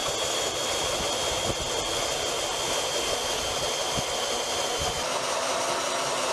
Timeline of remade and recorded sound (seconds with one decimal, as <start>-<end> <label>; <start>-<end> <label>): 0.0-6.3 recorded

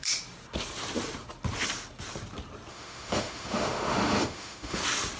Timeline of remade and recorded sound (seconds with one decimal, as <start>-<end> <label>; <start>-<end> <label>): 0.0-2.7 recorded; 2.7-4.8 remade; 4.8-5.2 recorded

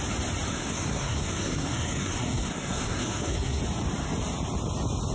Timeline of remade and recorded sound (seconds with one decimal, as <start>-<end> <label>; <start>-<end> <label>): 0.0-0.5 recorded; 0.5-3.6 remade; 3.6-5.1 recorded